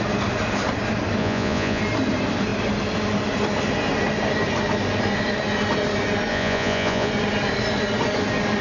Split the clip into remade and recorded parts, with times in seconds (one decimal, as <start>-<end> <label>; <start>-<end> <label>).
0.0-1.2 recorded; 1.2-1.8 remade; 1.8-6.3 recorded; 6.3-7.1 remade; 7.1-8.6 recorded